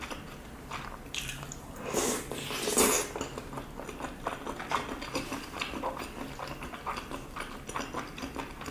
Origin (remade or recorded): recorded